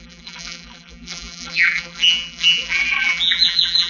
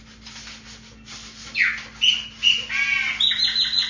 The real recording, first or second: second